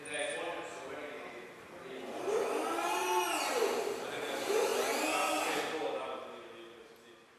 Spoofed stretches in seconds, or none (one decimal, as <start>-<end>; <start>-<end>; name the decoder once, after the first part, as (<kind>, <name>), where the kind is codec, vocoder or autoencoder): none